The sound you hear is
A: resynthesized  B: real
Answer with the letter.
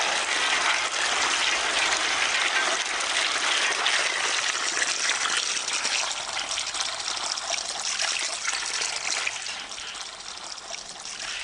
B